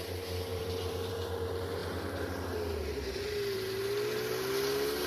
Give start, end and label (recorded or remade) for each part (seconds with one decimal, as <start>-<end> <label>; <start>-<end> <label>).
0.0-0.5 recorded; 0.5-1.1 remade; 1.1-5.1 recorded